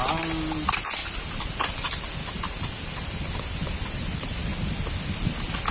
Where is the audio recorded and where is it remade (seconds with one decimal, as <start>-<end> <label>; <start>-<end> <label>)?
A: 0.0-5.7 recorded